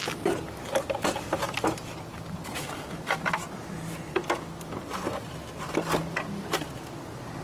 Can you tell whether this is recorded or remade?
recorded